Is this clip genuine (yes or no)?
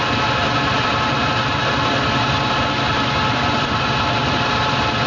yes